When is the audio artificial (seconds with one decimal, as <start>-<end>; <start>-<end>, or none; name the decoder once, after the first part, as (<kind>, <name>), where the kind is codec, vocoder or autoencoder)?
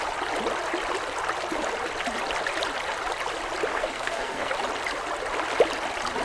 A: 3.7-4.5 (codec, SNAC)